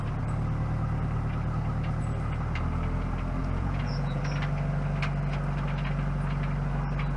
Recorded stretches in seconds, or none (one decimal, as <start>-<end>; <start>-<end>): 0.0-3.4; 4.2-7.2